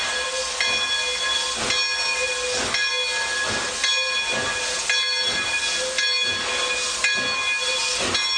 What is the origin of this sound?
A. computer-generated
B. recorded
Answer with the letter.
B